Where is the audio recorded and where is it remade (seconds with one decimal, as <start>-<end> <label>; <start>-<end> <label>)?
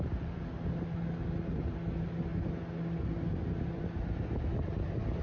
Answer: 0.0-5.2 recorded